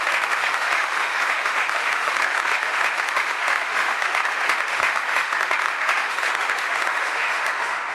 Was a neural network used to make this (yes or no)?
yes